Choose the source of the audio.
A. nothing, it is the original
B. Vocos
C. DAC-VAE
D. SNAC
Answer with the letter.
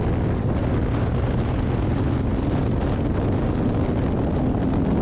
A